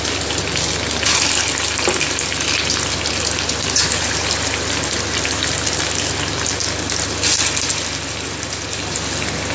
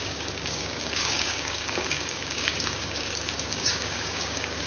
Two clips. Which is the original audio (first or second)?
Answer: first